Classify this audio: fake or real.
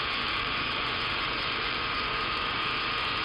fake